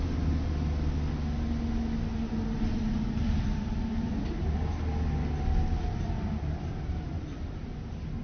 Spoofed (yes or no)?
no